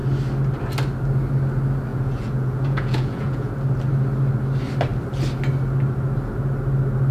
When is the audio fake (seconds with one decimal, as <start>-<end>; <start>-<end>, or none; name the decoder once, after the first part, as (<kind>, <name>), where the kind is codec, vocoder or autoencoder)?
1.9-3.5 (vocoder, Vocos)